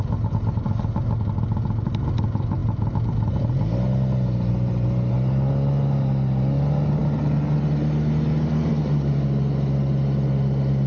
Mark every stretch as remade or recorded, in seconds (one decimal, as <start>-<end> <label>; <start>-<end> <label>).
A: 0.0-10.9 recorded